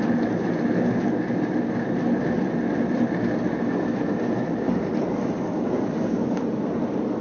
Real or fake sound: real